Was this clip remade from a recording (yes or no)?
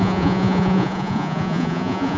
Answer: yes